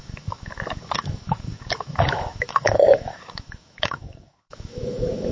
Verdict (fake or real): fake